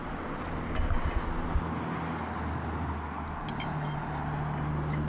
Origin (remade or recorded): recorded